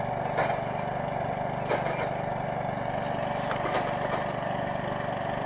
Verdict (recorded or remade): recorded